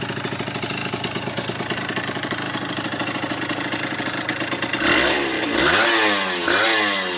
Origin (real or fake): real